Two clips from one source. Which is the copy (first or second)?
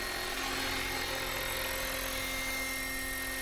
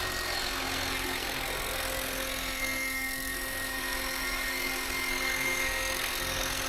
second